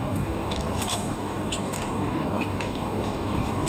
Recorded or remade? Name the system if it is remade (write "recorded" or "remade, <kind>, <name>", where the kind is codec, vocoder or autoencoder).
remade, codec, DAC